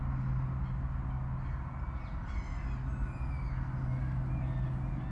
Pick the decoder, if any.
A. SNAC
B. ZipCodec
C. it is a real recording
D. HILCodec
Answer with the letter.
C